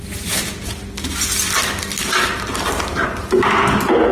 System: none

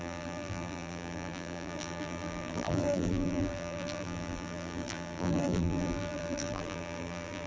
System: vocoder, BigVGAN v2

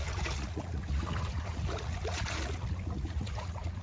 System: vocoder, Vocos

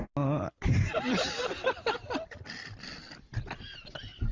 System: none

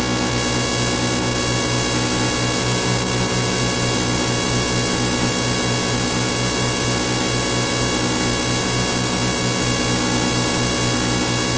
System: none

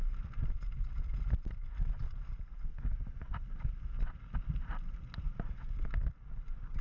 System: none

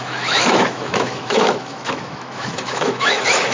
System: autoencoder, DAC-VAE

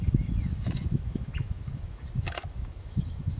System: autoencoder, DAC-VAE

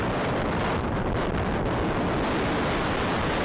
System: none